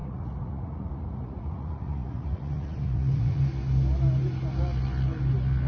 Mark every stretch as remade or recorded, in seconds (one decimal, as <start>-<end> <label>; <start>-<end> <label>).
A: 0.0-3.4 remade; 3.4-5.7 recorded